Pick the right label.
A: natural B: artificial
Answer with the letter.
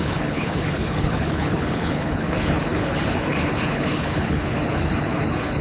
B